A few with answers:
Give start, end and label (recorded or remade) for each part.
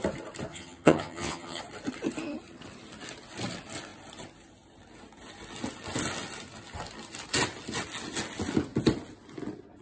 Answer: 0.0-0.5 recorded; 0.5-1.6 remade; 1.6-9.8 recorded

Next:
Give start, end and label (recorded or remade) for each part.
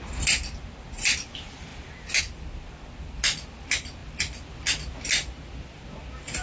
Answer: 0.0-6.4 recorded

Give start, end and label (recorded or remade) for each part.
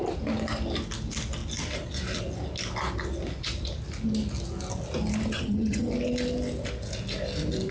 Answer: 0.0-5.3 recorded; 5.3-5.9 remade; 5.9-7.7 recorded